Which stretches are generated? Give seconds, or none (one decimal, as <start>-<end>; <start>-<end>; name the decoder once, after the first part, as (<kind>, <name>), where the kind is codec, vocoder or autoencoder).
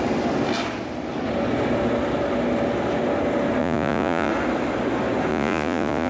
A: 3.6-4.3 (vocoder, Vocos); 5.3-6.1